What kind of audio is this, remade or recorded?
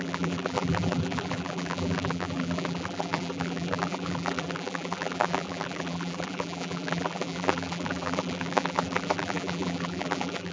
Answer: remade